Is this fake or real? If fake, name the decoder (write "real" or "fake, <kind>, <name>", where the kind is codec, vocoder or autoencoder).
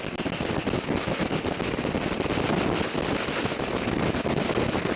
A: real